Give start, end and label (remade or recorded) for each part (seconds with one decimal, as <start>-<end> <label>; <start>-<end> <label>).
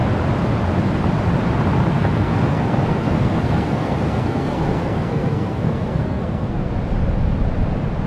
0.0-1.9 recorded; 1.9-6.7 remade; 6.7-8.1 recorded